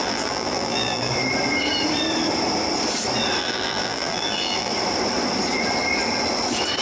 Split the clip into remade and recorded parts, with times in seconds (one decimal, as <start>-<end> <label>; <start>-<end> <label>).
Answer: 0.0-1.1 remade; 1.1-3.4 recorded; 3.4-4.7 remade; 4.7-6.8 recorded